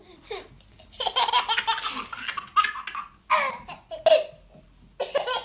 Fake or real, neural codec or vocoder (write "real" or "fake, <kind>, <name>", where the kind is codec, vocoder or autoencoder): real